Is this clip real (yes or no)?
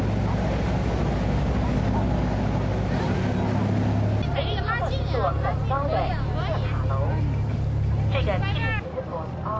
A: yes